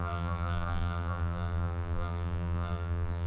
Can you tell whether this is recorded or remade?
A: remade